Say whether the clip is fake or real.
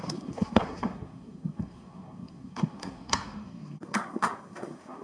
fake